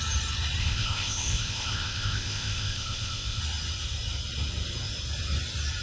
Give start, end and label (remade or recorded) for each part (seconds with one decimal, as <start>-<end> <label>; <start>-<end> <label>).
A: 0.0-0.6 recorded; 0.6-3.4 remade; 3.4-5.8 recorded